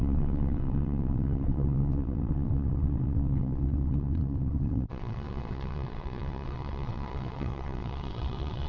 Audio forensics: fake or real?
fake